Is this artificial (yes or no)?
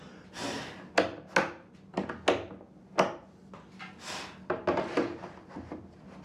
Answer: no